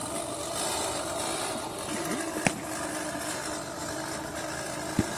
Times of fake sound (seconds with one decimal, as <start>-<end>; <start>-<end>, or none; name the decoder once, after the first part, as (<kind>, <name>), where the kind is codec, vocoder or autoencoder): none